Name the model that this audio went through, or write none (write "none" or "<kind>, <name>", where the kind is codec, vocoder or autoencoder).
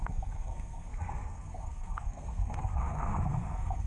codec, SNAC